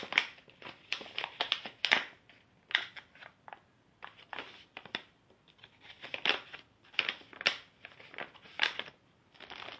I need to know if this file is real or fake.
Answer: real